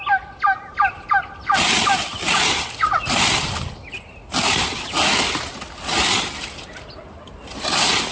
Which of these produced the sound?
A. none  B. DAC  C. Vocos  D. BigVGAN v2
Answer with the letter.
A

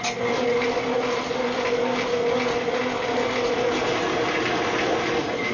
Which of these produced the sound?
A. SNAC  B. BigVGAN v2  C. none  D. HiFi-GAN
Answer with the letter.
C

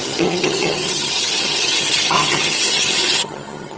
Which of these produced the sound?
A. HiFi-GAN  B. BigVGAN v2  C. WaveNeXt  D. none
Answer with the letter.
A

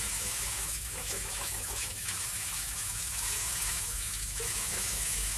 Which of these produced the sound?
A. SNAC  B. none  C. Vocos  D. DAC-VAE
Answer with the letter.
D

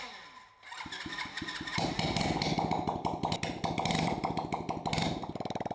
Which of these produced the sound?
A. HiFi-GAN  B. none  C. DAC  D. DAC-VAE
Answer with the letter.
B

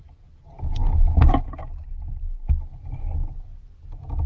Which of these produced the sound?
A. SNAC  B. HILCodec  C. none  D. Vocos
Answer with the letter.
C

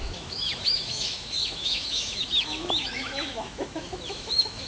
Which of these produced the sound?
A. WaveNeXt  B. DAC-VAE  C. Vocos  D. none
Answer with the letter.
B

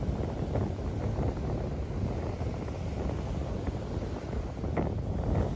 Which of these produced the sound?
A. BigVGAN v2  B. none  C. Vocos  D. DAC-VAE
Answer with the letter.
B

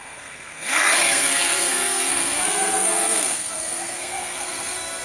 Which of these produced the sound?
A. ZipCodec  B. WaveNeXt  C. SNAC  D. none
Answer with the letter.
C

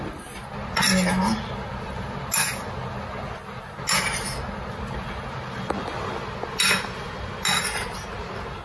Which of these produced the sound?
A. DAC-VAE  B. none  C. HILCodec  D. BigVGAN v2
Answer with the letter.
B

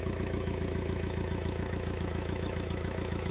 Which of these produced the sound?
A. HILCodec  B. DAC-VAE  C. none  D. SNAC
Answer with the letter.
B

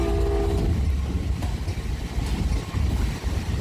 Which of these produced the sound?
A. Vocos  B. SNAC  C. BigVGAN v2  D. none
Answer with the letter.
D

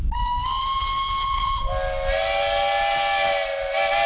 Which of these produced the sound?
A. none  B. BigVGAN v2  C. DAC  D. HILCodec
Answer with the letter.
A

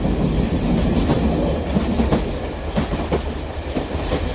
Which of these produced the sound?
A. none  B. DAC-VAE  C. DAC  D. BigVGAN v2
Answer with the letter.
A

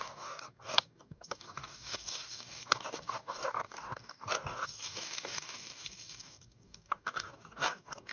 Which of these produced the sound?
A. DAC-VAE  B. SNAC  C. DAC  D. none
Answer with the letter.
C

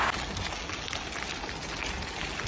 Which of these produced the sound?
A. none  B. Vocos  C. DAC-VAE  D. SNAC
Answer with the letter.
A